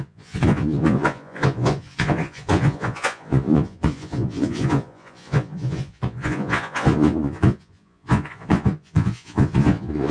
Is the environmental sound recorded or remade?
remade